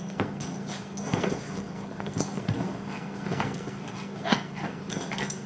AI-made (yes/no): yes